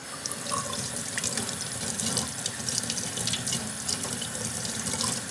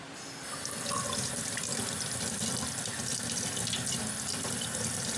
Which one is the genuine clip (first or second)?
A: second